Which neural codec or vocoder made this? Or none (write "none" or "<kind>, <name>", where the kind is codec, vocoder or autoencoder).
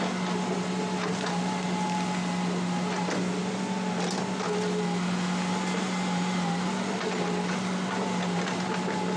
none